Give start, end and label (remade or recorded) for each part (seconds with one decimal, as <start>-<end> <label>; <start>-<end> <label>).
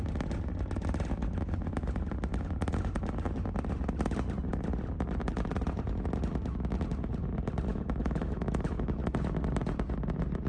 0.0-7.7 recorded; 7.7-9.2 remade; 9.2-10.5 recorded